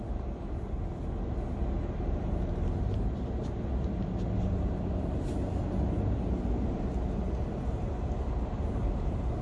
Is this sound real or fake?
real